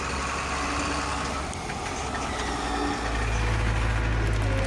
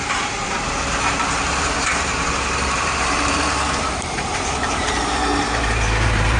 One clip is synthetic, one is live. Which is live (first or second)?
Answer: first